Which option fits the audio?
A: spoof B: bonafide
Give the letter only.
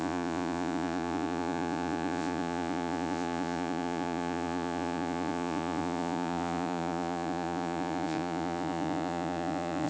A